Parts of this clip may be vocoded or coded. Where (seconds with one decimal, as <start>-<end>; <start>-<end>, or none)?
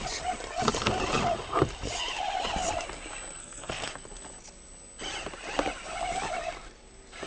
3.4-3.9